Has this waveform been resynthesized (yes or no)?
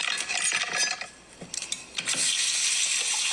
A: no